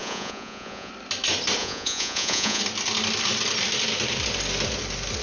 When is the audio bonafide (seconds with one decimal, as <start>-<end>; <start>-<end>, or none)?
0.9-1.6; 2.6-5.2